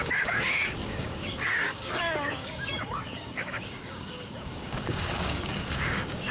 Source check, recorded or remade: remade